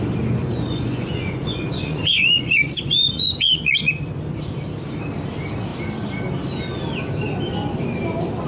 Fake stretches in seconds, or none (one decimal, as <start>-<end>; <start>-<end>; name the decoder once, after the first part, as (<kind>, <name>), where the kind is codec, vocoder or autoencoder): 0.4-3.9 (vocoder, Vocos)